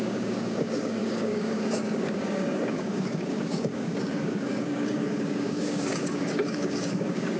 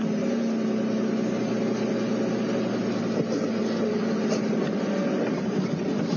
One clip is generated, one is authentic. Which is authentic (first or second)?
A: second